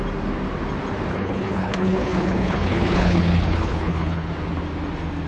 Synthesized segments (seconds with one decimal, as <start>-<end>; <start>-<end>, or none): 1.1-4.3